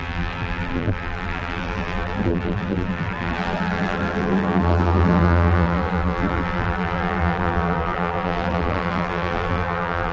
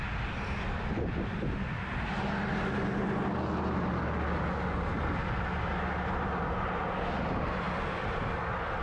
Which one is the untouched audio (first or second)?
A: second